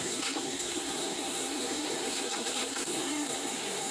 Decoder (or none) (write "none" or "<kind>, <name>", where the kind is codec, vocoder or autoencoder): codec, SNAC